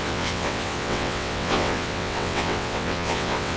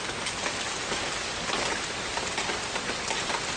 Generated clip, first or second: first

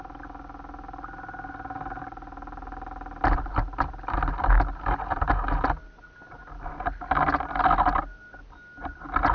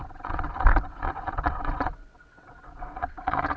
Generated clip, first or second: second